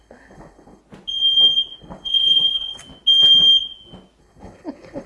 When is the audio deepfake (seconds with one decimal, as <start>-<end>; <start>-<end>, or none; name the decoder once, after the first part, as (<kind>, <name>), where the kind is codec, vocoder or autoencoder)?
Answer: 0.0-0.8 (codec, HILCodec); 1.8-2.8; 4.2-5.1